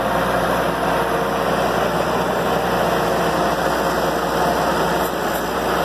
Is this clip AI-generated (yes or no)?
no